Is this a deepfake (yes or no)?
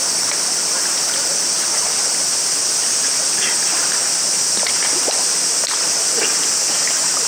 no